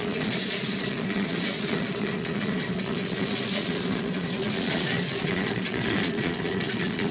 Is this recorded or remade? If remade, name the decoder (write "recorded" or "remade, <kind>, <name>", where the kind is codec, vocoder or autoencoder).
remade, vocoder, Vocos